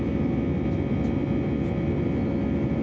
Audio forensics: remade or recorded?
recorded